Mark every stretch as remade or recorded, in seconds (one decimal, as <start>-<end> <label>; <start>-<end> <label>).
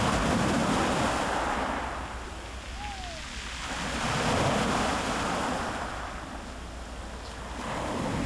0.0-4.9 recorded; 4.9-6.1 remade; 6.1-8.3 recorded